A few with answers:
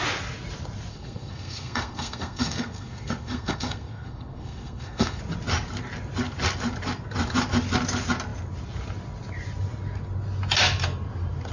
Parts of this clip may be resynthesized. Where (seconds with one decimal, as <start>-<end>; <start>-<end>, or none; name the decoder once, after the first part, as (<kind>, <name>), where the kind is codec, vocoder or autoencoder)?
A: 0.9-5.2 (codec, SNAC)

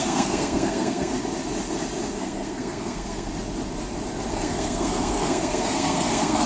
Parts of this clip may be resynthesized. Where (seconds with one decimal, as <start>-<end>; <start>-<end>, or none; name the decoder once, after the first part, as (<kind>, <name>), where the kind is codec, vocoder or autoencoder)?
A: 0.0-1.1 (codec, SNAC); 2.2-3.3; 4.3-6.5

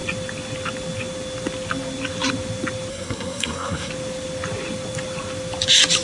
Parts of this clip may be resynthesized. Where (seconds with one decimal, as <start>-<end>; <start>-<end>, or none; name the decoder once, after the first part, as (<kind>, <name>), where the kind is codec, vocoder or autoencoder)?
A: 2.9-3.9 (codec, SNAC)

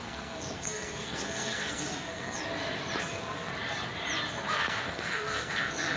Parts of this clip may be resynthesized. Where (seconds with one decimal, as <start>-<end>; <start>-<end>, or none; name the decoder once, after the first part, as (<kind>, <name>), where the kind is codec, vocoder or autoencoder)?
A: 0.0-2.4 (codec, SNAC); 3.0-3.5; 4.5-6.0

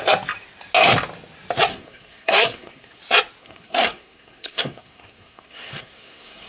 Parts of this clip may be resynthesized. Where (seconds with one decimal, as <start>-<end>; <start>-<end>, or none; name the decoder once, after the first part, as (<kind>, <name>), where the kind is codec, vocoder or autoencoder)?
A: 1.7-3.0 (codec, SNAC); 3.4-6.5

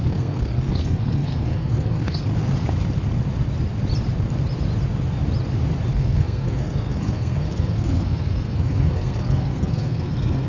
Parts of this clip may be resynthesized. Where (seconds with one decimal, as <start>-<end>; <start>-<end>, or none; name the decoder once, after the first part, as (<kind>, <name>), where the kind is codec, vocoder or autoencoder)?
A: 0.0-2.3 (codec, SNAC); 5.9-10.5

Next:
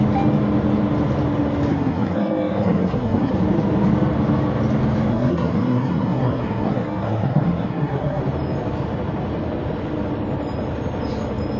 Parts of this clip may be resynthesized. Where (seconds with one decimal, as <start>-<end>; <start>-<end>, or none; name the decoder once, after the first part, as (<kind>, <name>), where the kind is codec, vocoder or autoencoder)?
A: 1.7-3.3 (codec, SNAC); 5.1-8.2